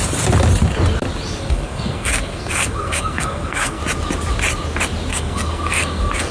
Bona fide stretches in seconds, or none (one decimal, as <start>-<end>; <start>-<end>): 0.0-1.4; 3.8-5.1